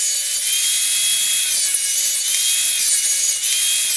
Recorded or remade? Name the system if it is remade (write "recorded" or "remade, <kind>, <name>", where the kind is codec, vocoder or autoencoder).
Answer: recorded